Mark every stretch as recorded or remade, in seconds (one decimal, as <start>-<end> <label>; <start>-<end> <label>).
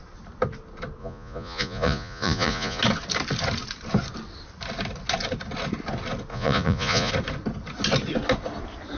0.0-1.0 recorded; 1.0-2.8 remade; 2.8-6.3 recorded; 6.3-7.1 remade; 7.1-9.0 recorded